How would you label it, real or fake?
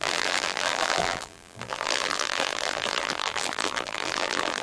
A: fake